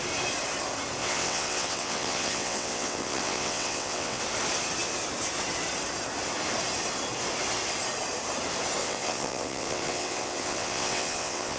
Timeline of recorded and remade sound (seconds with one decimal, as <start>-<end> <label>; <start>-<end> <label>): 0.0-1.0 recorded; 1.0-4.2 remade; 4.2-8.8 recorded; 8.8-11.6 remade